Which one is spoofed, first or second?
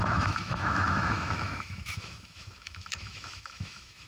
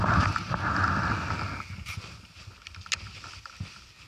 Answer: first